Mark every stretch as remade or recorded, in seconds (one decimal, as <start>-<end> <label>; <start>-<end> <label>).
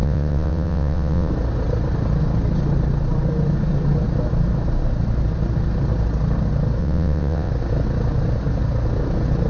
0.0-1.3 remade; 1.3-6.8 recorded; 6.8-7.5 remade; 7.5-9.5 recorded